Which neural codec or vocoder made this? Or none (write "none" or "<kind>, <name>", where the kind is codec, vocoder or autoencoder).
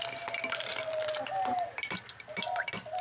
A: vocoder, BigVGAN v2